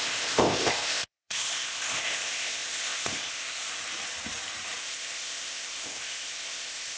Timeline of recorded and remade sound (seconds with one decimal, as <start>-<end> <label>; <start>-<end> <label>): 0.0-3.7 remade; 3.7-4.8 recorded; 4.8-7.0 remade